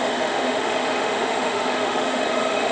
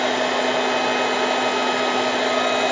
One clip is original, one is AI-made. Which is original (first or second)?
second